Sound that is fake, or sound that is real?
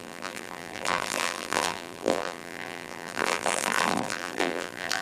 fake